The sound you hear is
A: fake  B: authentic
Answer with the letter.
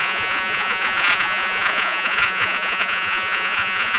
A